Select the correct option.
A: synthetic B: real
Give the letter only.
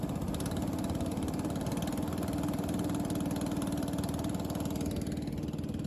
B